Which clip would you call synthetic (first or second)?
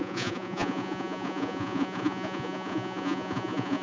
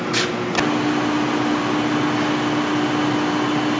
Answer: first